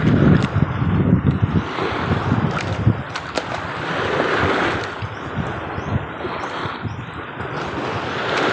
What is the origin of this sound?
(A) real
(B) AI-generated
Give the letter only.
A